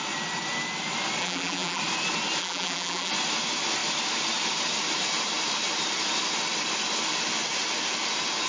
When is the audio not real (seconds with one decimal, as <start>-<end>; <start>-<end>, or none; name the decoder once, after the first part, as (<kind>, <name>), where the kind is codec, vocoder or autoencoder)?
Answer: 1.2-1.8 (vocoder, BigVGAN v2); 2.4-3.1